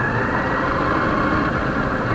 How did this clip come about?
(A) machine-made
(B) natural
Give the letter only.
B